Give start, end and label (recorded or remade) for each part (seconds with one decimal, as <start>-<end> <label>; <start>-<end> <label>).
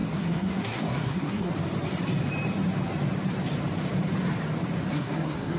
0.0-1.5 remade; 1.5-4.9 recorded; 4.9-5.6 remade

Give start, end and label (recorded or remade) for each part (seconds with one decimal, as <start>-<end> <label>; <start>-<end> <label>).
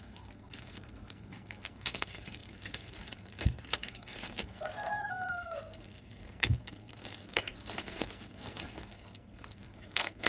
0.0-10.3 remade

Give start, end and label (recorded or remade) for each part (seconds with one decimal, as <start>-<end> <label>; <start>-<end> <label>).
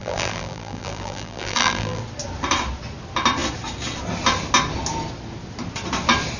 0.0-2.0 remade; 2.0-6.4 recorded